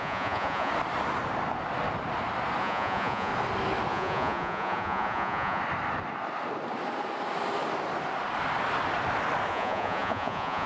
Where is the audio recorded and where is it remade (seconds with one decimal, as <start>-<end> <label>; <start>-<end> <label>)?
0.0-0.7 remade; 0.7-2.6 recorded; 2.6-3.3 remade; 3.3-3.9 recorded; 3.9-5.6 remade; 5.6-9.5 recorded; 9.5-10.7 remade